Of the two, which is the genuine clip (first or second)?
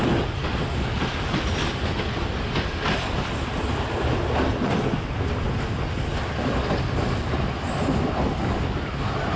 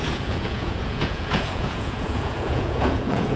first